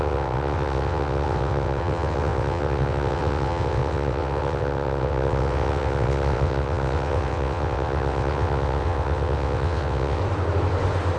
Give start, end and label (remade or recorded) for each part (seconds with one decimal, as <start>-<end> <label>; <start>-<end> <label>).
0.0-10.2 remade; 10.2-11.2 recorded